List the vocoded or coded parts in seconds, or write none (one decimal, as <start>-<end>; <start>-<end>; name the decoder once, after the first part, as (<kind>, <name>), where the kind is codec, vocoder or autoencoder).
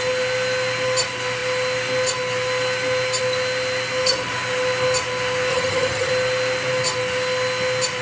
5.5-6.1 (vocoder, HiFi-GAN)